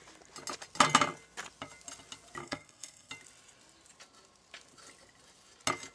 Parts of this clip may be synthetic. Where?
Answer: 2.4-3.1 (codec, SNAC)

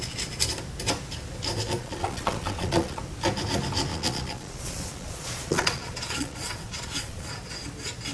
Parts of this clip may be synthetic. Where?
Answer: 1.8-3.0 (vocoder, Vocos); 3.9-7.3

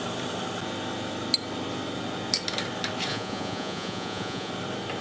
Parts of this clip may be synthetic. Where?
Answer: 3.1-4.5 (vocoder, Vocos)

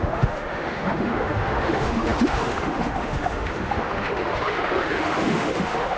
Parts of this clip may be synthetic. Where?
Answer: 0.0-6.0 (autoencoder, DAC-VAE)

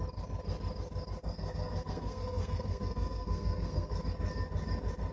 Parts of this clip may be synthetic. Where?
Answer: 1.2-3.9 (codec, SNAC)

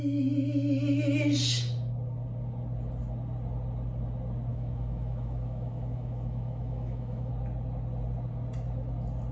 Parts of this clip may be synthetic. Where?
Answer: 4.5-7.3 (autoencoder, DAC-VAE)

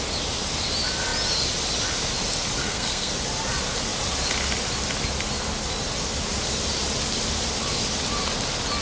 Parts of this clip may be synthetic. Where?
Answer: 2.6-3.1 (codec, SNAC)

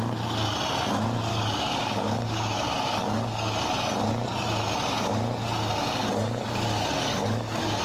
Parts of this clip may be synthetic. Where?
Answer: 1.3-3.7 (codec, DAC); 6.0-7.8